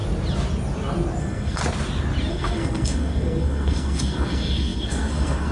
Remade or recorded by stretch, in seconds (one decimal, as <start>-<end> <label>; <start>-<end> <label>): 0.0-1.2 recorded; 1.2-1.6 remade; 1.6-2.3 recorded; 2.3-5.5 remade